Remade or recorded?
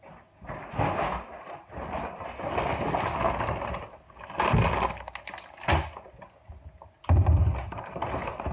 recorded